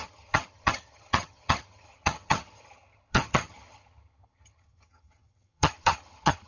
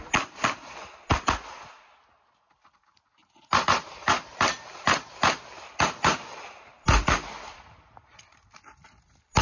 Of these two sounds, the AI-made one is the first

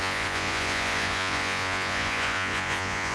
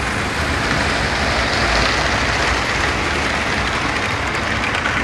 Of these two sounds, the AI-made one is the first